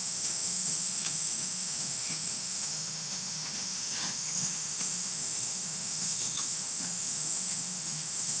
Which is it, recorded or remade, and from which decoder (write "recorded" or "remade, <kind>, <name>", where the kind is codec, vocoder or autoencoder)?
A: remade, autoencoder, DAC-VAE